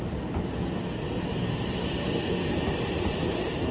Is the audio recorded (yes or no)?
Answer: yes